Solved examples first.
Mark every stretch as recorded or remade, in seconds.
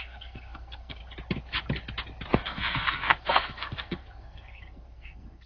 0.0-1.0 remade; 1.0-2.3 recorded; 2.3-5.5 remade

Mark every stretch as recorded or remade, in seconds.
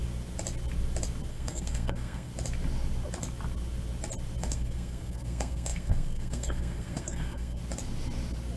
0.0-1.3 recorded; 1.3-2.3 remade; 2.3-4.4 recorded; 4.4-7.6 remade; 7.6-8.6 recorded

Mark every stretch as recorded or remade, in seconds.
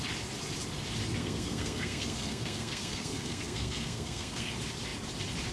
0.0-1.2 recorded; 1.2-4.5 remade; 4.5-5.5 recorded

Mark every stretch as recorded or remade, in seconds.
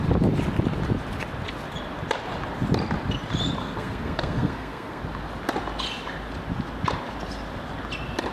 0.0-3.6 recorded; 3.6-5.0 remade; 5.0-8.3 recorded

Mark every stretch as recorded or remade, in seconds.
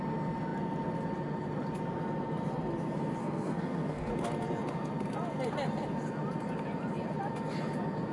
0.0-3.2 recorded; 3.2-4.1 remade; 4.1-8.1 recorded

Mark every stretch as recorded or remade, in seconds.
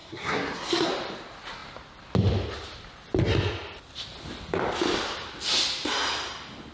0.0-0.9 remade; 0.9-6.7 recorded